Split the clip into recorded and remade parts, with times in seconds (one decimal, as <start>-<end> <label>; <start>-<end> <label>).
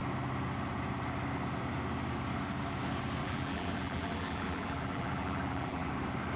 0.0-3.2 recorded; 3.2-5.9 remade; 5.9-6.4 recorded